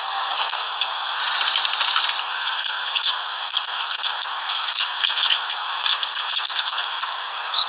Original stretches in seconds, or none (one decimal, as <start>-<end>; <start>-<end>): 1.2-2.2